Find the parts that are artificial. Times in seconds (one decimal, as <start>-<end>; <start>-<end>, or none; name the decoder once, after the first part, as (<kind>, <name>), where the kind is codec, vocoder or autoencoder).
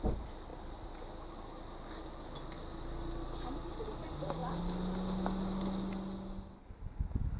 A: none